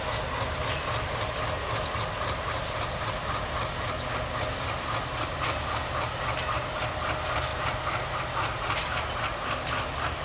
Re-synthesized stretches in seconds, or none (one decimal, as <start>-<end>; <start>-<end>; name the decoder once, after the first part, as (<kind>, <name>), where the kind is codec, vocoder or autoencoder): 7.5-8.2 (vocoder, BigVGAN v2)